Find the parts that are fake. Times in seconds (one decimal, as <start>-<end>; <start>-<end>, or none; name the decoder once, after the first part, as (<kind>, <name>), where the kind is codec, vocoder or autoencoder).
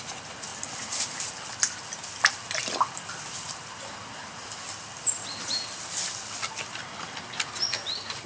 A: none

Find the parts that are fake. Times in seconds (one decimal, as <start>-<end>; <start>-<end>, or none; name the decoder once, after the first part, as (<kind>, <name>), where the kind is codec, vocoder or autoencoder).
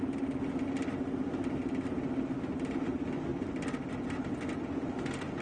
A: none